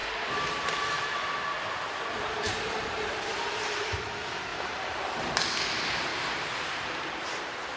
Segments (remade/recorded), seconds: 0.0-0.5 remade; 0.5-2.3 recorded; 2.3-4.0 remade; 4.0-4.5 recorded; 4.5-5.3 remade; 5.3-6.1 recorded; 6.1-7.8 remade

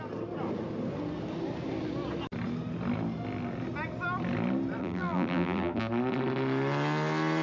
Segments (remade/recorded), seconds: 0.0-4.8 recorded; 4.8-5.8 remade; 5.8-7.4 recorded

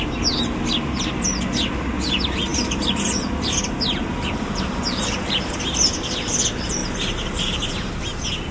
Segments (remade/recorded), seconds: 0.0-2.5 recorded; 2.5-5.5 remade; 5.5-6.8 recorded; 6.8-7.7 remade; 7.7-8.5 recorded

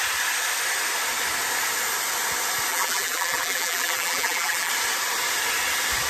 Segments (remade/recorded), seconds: 0.0-2.7 recorded; 2.7-4.7 remade; 4.7-6.1 recorded

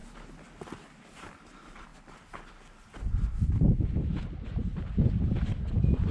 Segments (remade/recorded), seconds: 0.0-6.1 recorded

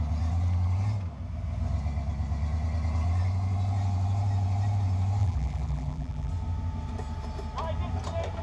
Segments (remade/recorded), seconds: 0.0-5.2 recorded; 5.2-6.3 remade; 6.3-8.4 recorded

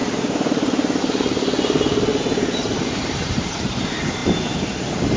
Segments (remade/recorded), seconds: 0.0-1.0 remade; 1.0-2.1 recorded; 2.1-3.8 remade; 3.8-5.2 recorded

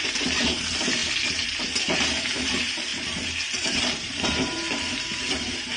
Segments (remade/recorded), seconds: 0.0-1.0 remade; 1.0-1.8 recorded; 1.8-5.8 remade